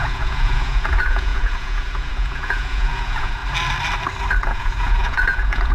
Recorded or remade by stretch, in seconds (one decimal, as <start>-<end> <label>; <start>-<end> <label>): 0.0-3.4 remade; 3.4-4.4 recorded; 4.4-5.7 remade